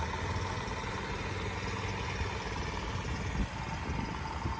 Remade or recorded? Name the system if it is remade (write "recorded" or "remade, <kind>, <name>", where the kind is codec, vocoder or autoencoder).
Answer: recorded